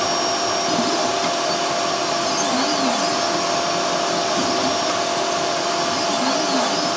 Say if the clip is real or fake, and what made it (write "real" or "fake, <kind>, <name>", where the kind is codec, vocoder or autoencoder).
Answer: real